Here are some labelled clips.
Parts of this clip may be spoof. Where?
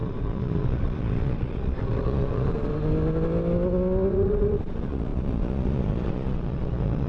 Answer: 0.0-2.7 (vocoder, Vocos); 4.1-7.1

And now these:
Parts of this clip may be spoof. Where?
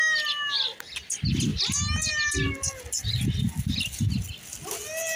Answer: none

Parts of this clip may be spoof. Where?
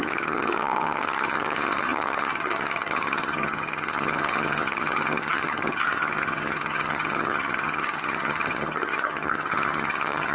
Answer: 0.0-10.3 (vocoder, HiFi-GAN)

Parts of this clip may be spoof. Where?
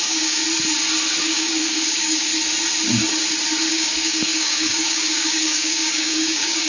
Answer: 0.0-0.4 (codec, DAC); 1.2-2.3; 3.6-6.7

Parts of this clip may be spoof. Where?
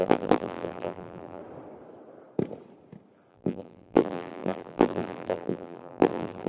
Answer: 0.0-1.4 (vocoder, BigVGAN v2); 3.3-6.5